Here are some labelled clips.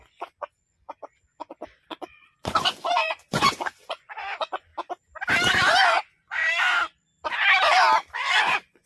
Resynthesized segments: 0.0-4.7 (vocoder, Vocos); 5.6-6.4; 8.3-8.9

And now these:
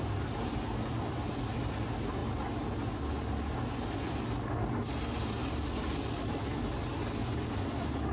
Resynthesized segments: 5.4-6.1 (vocoder, BigVGAN v2)